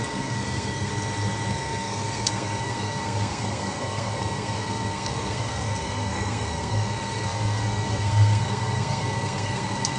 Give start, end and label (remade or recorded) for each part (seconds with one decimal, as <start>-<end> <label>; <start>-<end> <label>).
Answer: 0.0-0.9 remade; 0.9-1.5 recorded; 1.5-10.0 remade

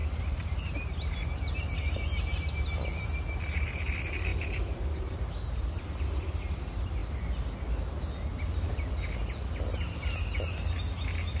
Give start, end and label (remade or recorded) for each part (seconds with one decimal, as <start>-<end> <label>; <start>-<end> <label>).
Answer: 0.0-0.7 remade; 0.7-4.3 recorded; 4.3-5.9 remade; 5.9-11.4 recorded

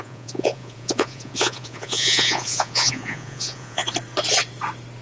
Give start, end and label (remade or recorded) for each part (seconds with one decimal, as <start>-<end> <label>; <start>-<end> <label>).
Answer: 0.0-3.8 remade; 3.8-5.0 recorded

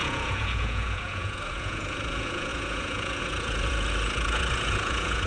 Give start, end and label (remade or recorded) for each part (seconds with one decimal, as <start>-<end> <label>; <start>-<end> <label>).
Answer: 0.0-5.3 remade

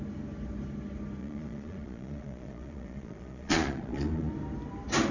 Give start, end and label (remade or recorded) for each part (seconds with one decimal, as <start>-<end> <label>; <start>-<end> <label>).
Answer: 0.0-1.2 recorded; 1.2-4.3 remade; 4.3-5.1 recorded

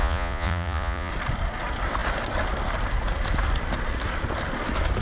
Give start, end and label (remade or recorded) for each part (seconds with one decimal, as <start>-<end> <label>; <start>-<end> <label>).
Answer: 0.0-1.1 remade; 1.1-5.0 recorded

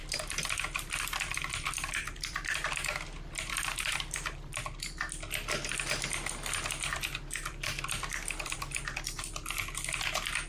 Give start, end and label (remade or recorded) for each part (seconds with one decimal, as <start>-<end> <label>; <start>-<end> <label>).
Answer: 0.0-4.6 remade; 4.6-6.9 recorded; 6.9-9.6 remade; 9.6-10.5 recorded

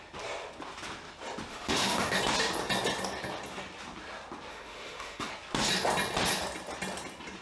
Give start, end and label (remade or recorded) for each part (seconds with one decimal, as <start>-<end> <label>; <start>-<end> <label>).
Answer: 0.0-1.5 recorded; 1.5-2.2 remade; 2.2-4.5 recorded; 4.5-5.3 remade; 5.3-7.4 recorded